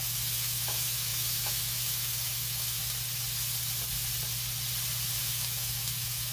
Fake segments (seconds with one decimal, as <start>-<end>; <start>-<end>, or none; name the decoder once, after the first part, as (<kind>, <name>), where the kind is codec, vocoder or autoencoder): 0.0-2.8 (autoencoder, DAC-VAE); 5.2-6.3